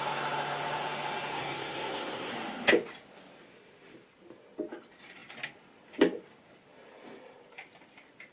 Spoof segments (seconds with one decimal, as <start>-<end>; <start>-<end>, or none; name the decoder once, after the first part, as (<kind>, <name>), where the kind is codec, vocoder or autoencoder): 1.3-2.3 (codec, SNAC)